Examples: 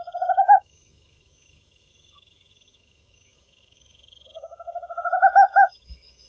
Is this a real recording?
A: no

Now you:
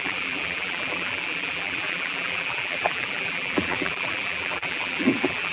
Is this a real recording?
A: no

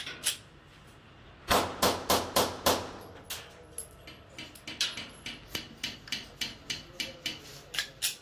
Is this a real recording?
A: yes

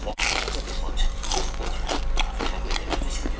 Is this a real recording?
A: yes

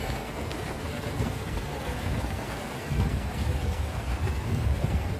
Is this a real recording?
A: no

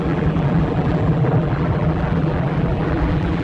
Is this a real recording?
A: no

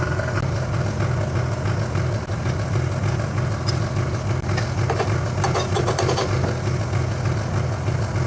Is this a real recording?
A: yes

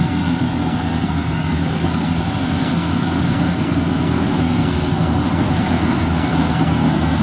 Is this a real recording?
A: no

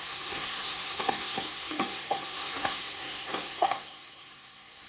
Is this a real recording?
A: no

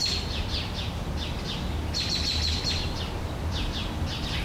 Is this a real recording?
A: yes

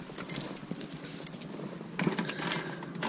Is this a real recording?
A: yes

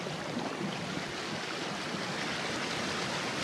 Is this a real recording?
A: yes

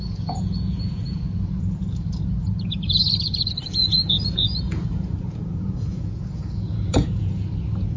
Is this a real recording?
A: no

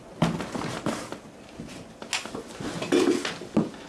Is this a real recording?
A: yes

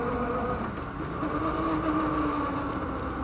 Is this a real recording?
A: yes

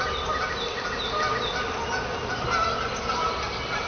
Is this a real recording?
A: yes